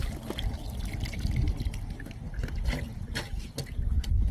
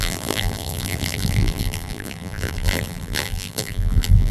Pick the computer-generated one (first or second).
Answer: second